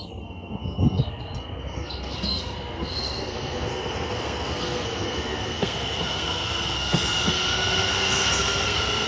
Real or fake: fake